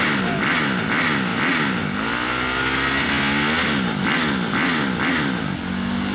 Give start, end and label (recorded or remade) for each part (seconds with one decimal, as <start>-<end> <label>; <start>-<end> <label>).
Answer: 0.0-6.1 recorded